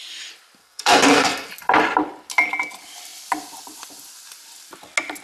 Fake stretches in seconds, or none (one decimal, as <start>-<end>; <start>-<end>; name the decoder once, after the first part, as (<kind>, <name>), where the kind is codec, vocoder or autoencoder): 0.6-1.5 (codec, SNAC)